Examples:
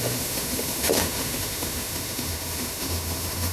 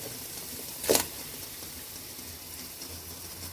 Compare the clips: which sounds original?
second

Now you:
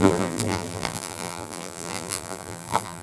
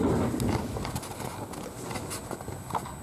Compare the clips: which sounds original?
second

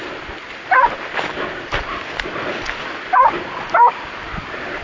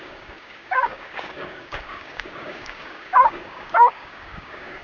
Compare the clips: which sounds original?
first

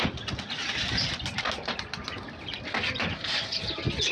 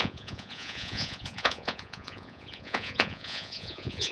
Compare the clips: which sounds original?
first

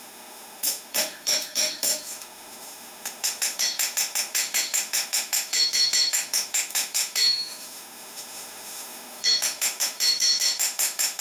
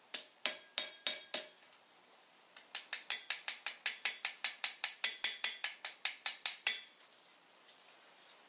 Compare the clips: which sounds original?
second